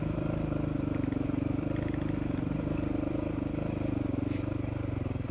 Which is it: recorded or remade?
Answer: remade